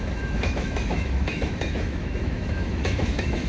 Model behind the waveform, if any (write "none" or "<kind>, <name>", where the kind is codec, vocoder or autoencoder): autoencoder, DAC-VAE